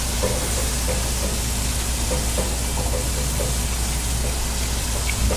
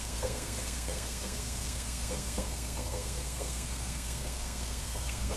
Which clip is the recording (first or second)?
first